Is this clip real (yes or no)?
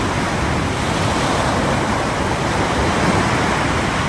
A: yes